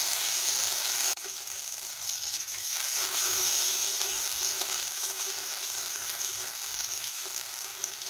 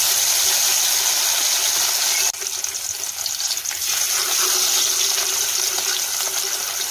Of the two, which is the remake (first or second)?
first